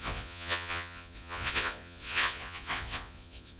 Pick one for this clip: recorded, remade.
remade